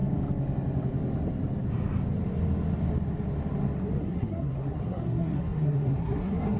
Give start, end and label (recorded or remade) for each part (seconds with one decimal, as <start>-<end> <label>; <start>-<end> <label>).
0.0-4.0 recorded; 4.0-6.6 remade